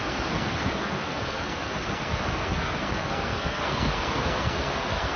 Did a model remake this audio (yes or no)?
yes